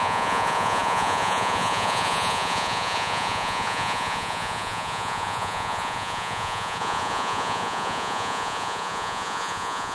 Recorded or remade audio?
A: remade